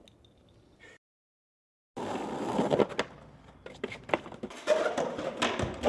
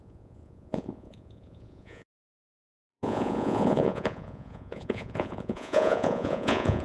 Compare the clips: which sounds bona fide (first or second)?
first